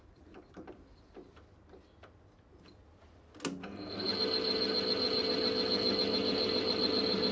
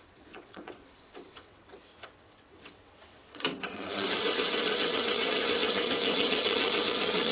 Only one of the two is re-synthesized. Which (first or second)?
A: second